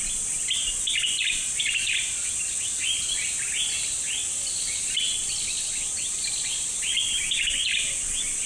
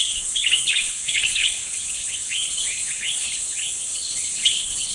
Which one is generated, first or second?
second